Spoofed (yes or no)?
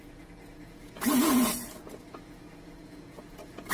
yes